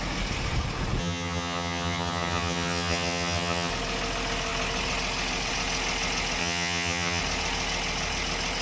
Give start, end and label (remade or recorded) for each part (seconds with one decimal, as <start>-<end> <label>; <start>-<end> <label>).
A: 0.0-1.0 recorded; 1.0-3.7 remade; 3.7-6.4 recorded; 6.4-7.2 remade; 7.2-8.6 recorded